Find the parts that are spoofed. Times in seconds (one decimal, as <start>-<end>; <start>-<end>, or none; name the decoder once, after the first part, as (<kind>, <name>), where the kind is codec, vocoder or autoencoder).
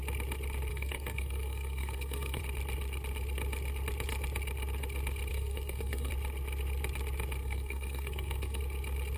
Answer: 0.7-2.4 (codec, SNAC); 5.3-6.1; 7.4-8.6